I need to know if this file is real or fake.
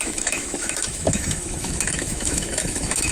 fake